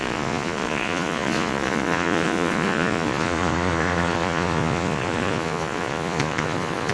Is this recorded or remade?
remade